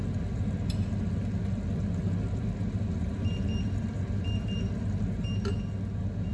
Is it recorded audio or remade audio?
recorded